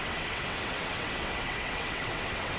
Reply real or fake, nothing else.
fake